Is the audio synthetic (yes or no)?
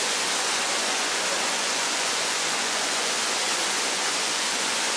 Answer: yes